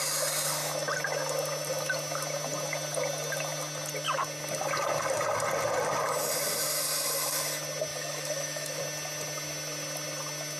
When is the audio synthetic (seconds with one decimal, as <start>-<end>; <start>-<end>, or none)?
7.9-8.8